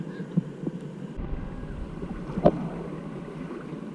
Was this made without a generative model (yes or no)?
yes